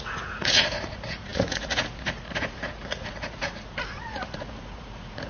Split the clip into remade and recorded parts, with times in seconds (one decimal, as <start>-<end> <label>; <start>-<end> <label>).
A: 0.0-5.3 remade